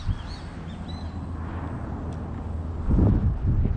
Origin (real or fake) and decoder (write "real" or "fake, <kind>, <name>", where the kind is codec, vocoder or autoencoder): real